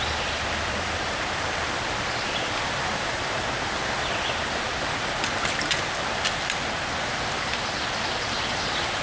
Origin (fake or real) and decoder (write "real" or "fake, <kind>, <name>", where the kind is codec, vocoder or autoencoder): fake, vocoder, BigVGAN v2